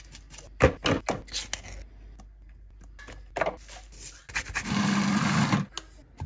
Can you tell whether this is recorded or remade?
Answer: recorded